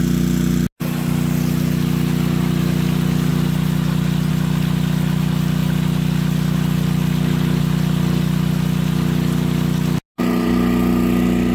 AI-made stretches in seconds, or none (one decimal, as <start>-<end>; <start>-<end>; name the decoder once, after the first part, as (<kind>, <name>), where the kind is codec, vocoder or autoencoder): none